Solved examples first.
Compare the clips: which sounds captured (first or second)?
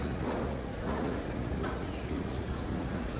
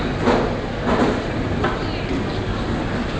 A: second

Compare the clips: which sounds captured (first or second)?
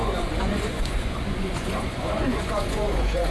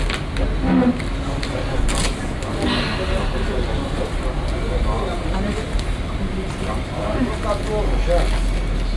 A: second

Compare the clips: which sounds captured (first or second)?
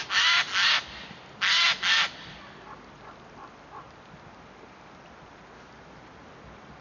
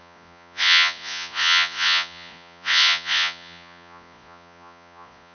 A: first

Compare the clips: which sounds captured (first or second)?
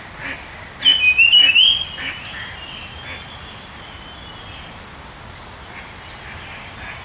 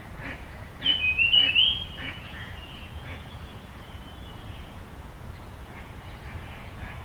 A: first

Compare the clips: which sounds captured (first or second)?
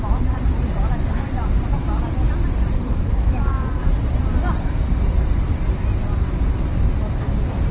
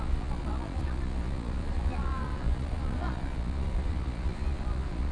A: first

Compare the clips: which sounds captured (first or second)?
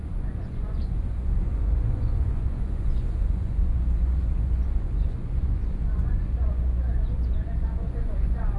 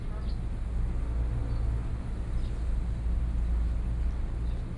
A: second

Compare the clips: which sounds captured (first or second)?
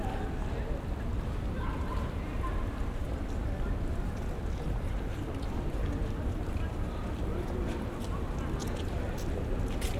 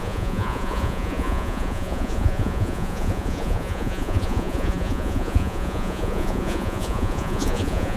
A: first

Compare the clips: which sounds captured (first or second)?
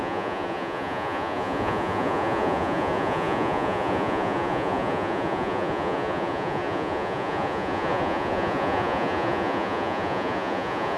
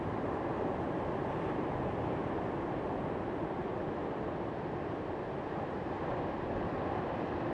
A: second